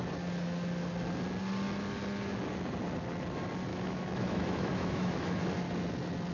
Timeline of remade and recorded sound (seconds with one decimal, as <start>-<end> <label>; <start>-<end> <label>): 0.0-3.7 recorded; 3.7-5.4 remade; 5.4-6.3 recorded